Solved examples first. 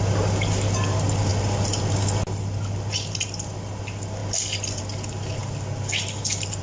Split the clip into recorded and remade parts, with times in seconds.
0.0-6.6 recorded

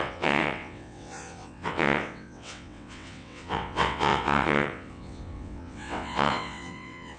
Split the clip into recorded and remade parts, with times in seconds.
0.0-7.2 remade

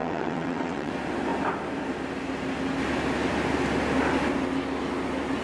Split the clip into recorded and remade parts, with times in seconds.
0.0-0.9 remade; 0.9-5.4 recorded

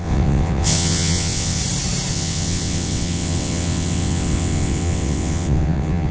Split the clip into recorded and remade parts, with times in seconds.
0.0-1.6 remade; 1.6-2.1 recorded; 2.1-6.1 remade

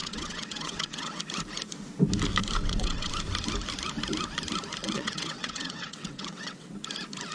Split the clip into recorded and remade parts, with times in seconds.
0.0-1.2 remade; 1.2-2.6 recorded; 2.6-3.1 remade; 3.1-4.8 recorded; 4.8-6.7 remade; 6.7-7.3 recorded

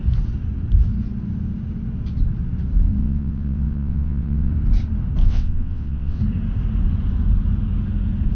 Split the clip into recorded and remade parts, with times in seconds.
0.0-3.0 recorded; 3.0-4.5 remade; 4.5-5.2 recorded; 5.2-6.2 remade; 6.2-8.3 recorded

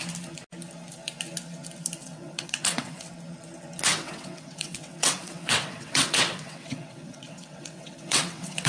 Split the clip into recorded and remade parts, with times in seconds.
0.0-2.0 recorded; 2.0-3.1 remade; 3.1-3.9 recorded; 3.9-8.7 remade

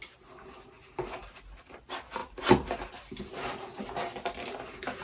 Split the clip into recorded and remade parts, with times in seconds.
0.0-5.0 recorded